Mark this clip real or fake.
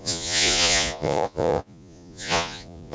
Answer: fake